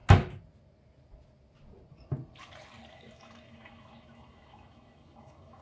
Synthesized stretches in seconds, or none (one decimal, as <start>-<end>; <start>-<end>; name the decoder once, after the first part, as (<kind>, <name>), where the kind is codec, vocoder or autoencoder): 2.9-5.6 (autoencoder, DAC-VAE)